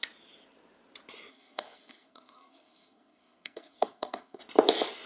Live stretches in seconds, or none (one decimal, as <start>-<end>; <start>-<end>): 0.0-1.3; 4.4-5.1